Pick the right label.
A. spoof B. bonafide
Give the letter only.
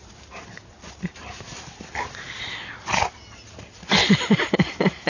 B